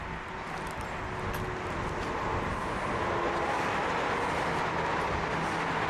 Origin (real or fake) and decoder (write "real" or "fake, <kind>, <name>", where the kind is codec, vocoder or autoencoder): real